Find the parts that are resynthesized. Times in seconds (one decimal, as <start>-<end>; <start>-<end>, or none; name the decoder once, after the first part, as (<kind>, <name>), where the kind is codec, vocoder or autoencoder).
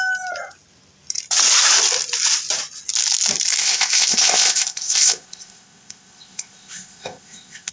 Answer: 3.6-7.7 (codec, ZipCodec)